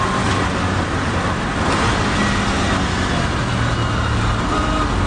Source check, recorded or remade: recorded